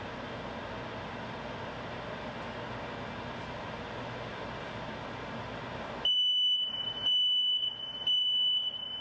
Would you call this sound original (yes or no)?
yes